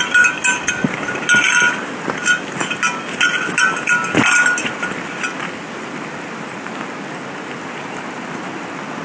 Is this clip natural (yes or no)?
yes